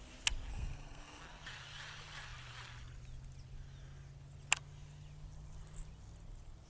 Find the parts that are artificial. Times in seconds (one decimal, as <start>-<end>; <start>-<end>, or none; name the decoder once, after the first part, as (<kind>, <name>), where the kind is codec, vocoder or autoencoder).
0.5-1.2 (codec, SNAC)